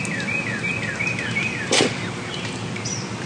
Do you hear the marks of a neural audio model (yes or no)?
no